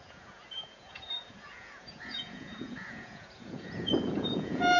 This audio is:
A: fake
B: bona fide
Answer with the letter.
A